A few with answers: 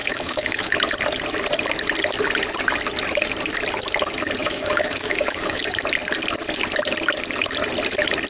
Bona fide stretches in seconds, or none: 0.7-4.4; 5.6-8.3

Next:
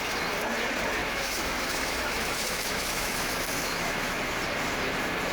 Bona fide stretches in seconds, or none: 0.0-1.0; 4.2-5.3

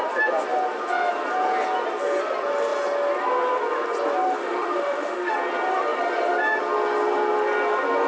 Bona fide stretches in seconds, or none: 0.0-4.4; 5.3-8.1